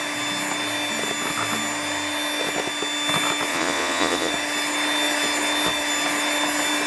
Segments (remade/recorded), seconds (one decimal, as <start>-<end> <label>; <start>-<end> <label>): 0.0-3.5 recorded; 3.5-4.3 remade; 4.3-6.9 recorded